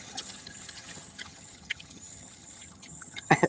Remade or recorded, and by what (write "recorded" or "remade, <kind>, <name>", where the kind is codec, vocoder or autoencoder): remade, vocoder, HiFi-GAN